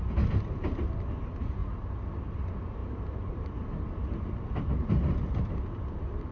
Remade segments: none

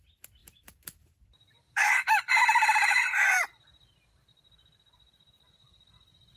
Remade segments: 0.4-3.4

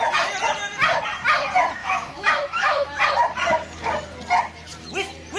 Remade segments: 1.8-3.0

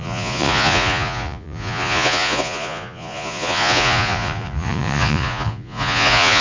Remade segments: 0.0-6.4

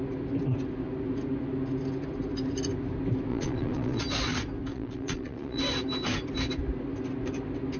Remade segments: 3.3-4.0; 4.7-5.6

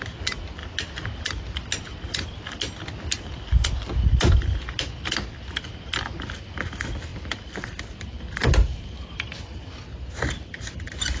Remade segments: none

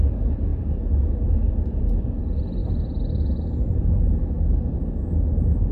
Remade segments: none

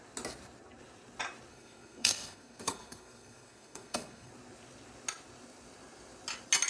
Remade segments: 1.5-4.3